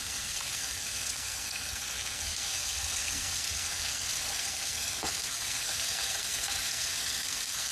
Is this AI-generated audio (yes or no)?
yes